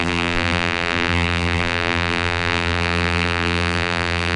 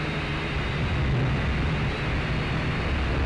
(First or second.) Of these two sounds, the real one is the second